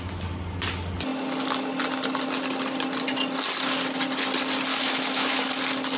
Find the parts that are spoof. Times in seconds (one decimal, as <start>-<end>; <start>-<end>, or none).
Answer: 4.7-5.5